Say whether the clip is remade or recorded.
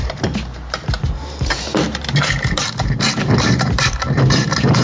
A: remade